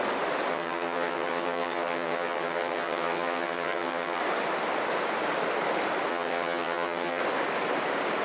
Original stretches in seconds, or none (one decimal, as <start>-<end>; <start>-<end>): 0.0-0.5; 4.2-6.1; 7.2-8.2